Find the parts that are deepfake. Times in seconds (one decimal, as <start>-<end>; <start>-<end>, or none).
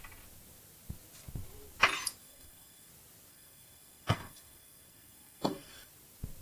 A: 2.2-2.9; 3.3-5.9